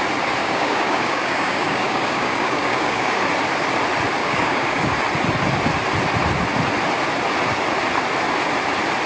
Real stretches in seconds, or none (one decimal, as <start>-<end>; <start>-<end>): 0.0-0.4; 3.2-4.2; 4.9-9.1

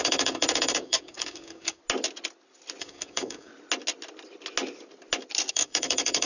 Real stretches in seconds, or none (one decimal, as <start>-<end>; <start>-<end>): 1.8-2.8; 3.5-5.5

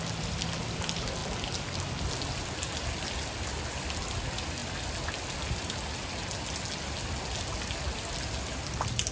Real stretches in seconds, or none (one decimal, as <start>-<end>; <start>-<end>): 0.0-9.1

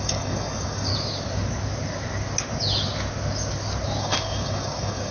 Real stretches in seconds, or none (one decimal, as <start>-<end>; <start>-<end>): 0.9-4.0

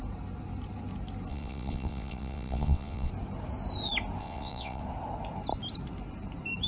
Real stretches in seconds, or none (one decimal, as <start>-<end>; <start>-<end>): 0.0-1.3; 3.1-4.2; 4.8-6.7

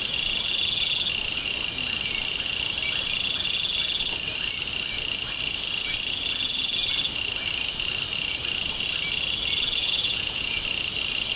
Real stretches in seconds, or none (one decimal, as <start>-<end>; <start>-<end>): 0.0-9.8; 10.6-11.4

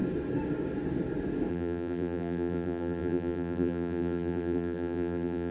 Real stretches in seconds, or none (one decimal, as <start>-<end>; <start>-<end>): 0.0-1.5

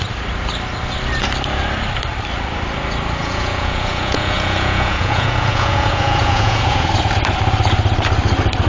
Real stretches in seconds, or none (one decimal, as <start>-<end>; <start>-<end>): 0.0-3.2; 6.9-8.7